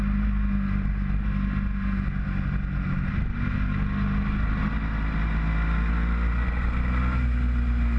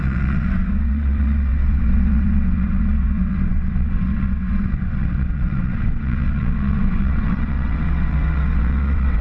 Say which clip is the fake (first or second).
second